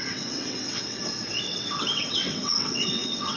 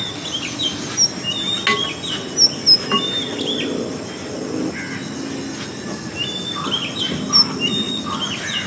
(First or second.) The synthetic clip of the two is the first